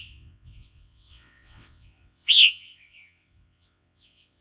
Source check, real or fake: fake